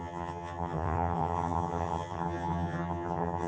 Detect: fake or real fake